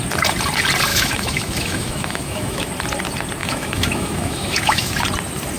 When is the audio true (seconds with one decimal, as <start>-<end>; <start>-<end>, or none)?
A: 0.0-0.9; 2.7-3.4; 4.9-5.6